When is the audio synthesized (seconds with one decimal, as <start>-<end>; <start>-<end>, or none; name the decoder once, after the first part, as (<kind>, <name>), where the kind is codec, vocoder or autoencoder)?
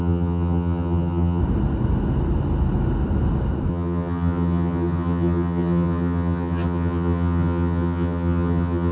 0.0-1.4 (vocoder, HiFi-GAN); 3.7-8.9